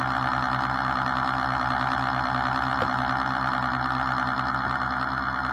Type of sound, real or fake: real